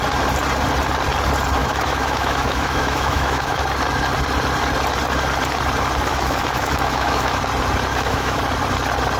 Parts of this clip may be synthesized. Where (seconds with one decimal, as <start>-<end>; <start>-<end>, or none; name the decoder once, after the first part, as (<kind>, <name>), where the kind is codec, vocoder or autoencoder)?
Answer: 1.6-3.6 (autoencoder, DAC-VAE); 6.1-7.4; 7.9-8.4